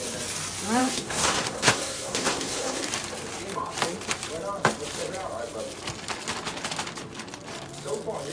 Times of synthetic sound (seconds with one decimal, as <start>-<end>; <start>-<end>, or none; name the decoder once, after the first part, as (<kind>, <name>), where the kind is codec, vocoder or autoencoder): 0.8-2.9 (codec, SNAC)